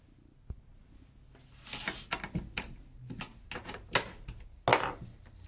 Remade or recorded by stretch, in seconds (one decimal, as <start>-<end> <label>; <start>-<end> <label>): 0.0-5.5 recorded